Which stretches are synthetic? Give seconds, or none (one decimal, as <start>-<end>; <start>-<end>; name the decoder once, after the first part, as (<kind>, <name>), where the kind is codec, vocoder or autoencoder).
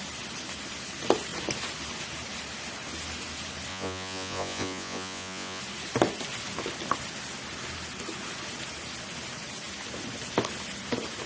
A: 3.7-5.6 (vocoder, Vocos)